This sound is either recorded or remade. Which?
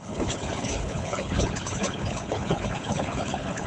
remade